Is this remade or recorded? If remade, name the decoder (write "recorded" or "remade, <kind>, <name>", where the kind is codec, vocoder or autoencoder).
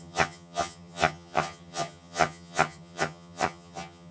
remade, vocoder, HiFi-GAN